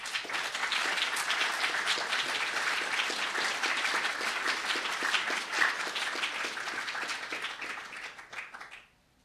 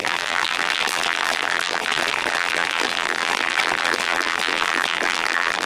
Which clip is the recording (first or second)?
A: first